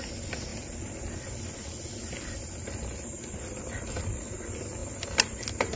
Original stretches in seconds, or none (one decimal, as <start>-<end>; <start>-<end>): 0.0-5.8